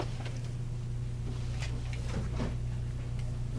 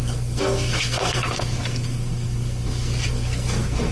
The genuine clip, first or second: first